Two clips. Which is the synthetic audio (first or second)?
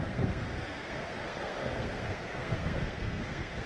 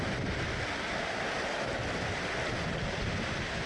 first